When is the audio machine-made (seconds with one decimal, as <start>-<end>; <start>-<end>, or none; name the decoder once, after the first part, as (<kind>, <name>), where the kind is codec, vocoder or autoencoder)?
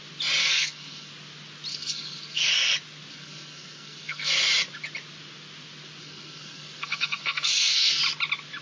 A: 0.4-1.1 (codec, SNAC); 1.7-2.5; 3.1-4.3; 6.0-8.0